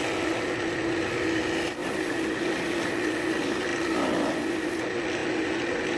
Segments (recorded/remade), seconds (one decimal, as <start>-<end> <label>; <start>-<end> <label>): 0.0-6.0 recorded